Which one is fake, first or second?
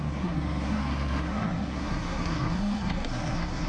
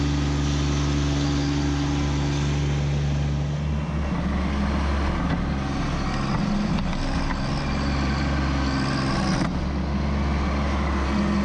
first